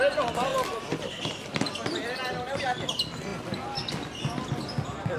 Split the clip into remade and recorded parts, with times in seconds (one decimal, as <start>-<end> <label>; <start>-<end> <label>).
0.0-5.2 recorded